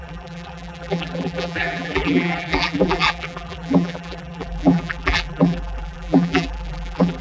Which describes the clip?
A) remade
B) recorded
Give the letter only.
A